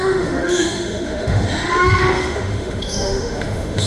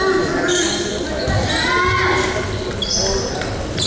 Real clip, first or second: second